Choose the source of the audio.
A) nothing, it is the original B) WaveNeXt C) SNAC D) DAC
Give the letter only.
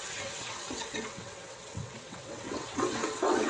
B